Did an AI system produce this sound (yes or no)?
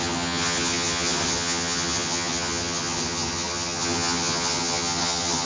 yes